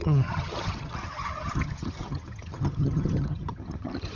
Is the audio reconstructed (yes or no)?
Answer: yes